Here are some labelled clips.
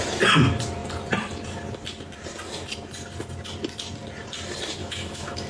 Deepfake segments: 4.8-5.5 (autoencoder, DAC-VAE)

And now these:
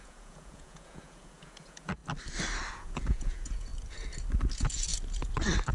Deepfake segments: 0.0-2.0 (vocoder, Vocos); 2.7-3.7; 4.5-4.9

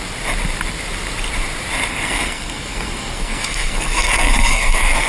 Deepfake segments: 1.9-5.1 (codec, SNAC)

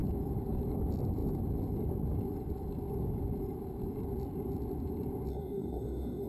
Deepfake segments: 5.3-6.3 (codec, DAC)

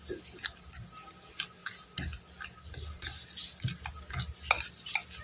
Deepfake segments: none

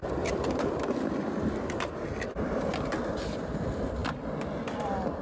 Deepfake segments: none

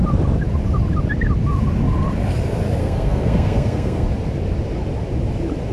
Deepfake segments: 2.8-4.1 (codec, SNAC)